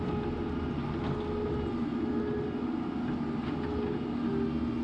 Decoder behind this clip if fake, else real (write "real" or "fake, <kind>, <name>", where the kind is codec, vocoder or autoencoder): real